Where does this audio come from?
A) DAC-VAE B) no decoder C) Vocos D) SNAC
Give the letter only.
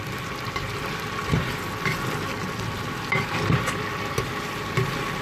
B